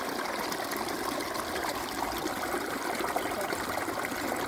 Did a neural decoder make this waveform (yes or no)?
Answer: yes